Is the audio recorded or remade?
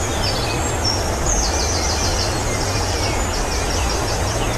recorded